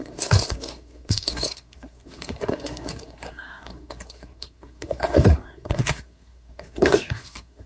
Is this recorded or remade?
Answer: remade